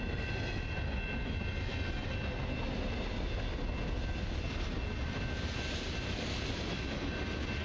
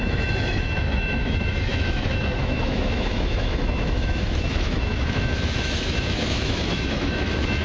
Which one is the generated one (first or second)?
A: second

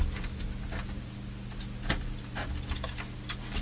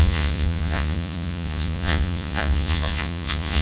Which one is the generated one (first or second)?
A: second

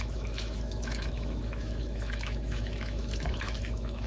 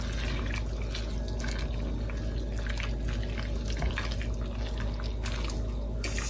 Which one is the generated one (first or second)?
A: first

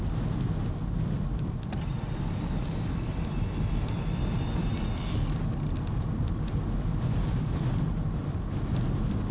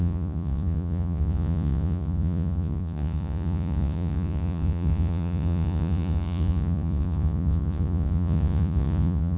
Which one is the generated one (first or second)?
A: second